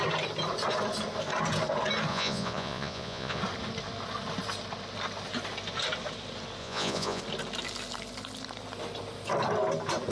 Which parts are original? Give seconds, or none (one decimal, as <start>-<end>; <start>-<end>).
0.0-2.1; 3.4-6.6; 7.2-10.1